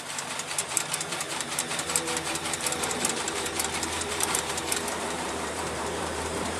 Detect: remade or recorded remade